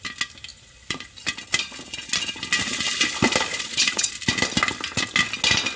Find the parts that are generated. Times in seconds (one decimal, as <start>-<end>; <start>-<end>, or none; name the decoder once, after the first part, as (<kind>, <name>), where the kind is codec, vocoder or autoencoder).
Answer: 0.5-1.1 (vocoder, Vocos); 3.5-4.1